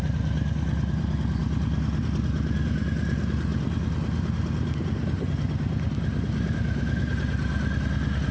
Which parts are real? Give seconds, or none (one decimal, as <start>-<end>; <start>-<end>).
0.0-8.3